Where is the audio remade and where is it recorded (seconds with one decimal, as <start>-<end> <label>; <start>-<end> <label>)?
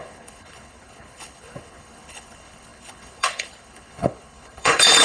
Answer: 0.0-5.0 remade